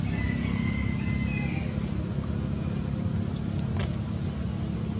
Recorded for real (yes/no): yes